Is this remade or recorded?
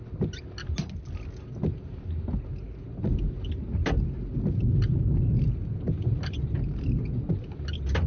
recorded